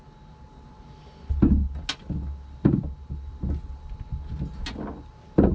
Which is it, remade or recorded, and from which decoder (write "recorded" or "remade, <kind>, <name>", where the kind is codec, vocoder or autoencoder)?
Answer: recorded